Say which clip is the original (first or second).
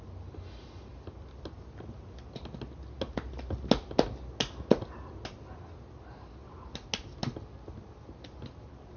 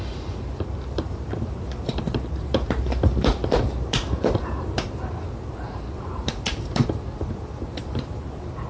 first